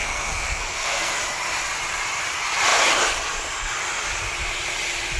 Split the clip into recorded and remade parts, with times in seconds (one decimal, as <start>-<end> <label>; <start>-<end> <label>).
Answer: 0.0-1.2 remade; 1.2-5.2 recorded